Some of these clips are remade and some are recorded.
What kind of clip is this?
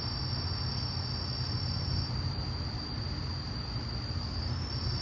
recorded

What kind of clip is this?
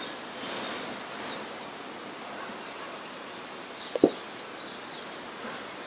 recorded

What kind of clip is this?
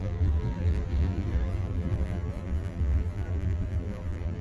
remade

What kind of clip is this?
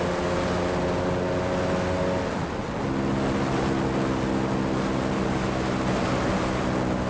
recorded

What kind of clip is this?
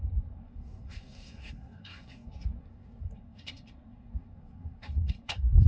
remade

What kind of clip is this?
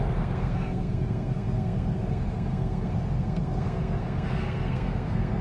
remade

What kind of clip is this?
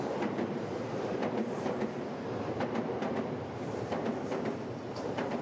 remade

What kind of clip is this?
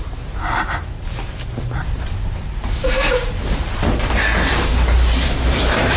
remade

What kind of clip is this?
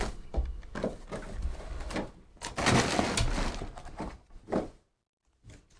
recorded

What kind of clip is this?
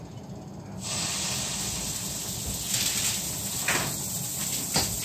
recorded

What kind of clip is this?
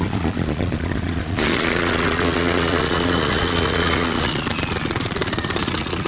remade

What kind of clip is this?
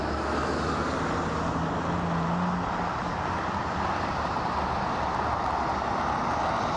recorded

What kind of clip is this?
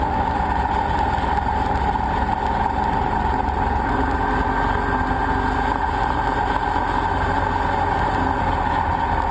recorded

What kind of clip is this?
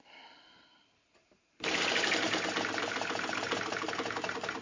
recorded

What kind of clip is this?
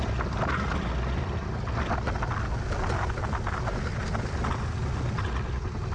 recorded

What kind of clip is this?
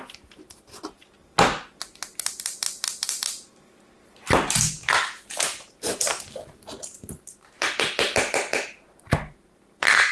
recorded